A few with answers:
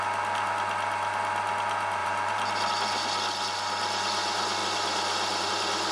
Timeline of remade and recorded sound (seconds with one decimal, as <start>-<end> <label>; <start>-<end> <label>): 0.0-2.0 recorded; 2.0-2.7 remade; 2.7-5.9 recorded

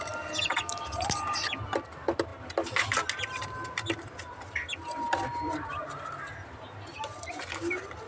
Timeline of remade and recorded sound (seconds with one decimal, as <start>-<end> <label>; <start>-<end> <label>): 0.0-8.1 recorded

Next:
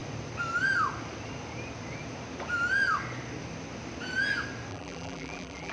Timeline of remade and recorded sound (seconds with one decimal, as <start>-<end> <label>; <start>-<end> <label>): 0.0-4.7 recorded; 4.7-5.7 remade

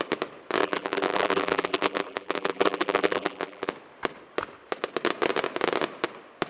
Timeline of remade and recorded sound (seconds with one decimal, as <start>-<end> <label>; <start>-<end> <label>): 0.0-0.6 recorded; 0.6-3.7 remade; 3.7-6.5 recorded

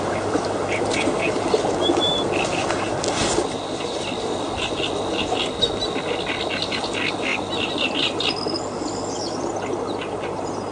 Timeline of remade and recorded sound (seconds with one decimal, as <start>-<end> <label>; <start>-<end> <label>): 0.0-3.2 recorded; 3.2-4.6 remade; 4.6-7.3 recorded; 7.3-8.4 remade; 8.4-10.7 recorded

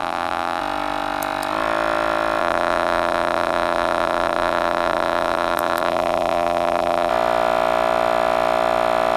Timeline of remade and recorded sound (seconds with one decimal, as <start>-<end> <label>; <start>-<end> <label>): 0.0-0.6 remade; 0.6-2.4 recorded; 2.4-7.1 remade; 7.1-9.2 recorded